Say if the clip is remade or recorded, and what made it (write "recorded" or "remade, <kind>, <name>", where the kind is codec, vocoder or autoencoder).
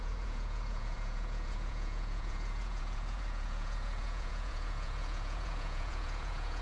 remade, vocoder, Vocos